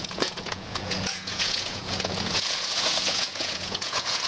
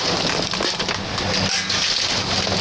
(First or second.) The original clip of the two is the second